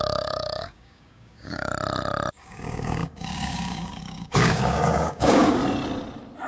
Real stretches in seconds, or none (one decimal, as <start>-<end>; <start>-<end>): 1.7-2.3; 5.6-6.5